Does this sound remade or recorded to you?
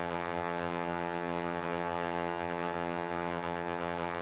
remade